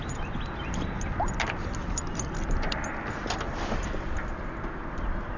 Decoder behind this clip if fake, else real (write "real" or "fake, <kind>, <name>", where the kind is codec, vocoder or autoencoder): real